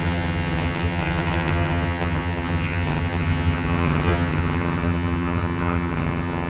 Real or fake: fake